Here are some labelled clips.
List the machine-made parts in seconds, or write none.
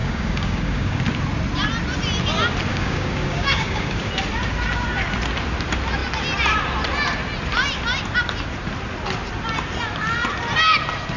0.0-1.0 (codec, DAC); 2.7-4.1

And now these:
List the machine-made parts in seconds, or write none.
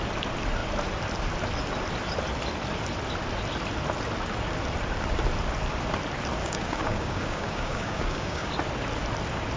6.4-8.5 (codec, DAC)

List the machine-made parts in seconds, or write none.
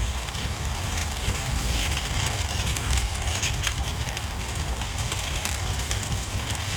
0.0-6.8 (codec, DAC)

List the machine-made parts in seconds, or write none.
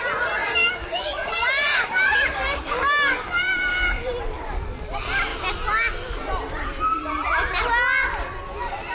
0.4-4.1 (codec, DAC)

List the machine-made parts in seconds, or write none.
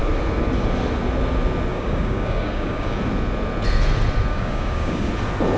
1.7-3.0 (codec, DAC); 4.3-5.1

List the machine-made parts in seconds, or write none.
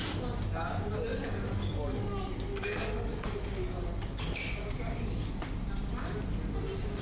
1.1-5.3 (codec, DAC)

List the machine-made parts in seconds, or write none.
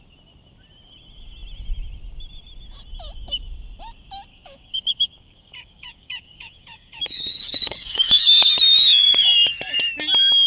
4.3-8.5 (codec, DAC); 9.1-9.8